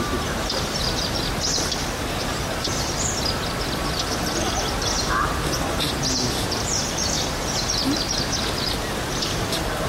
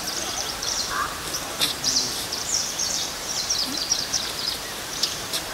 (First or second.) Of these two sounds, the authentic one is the first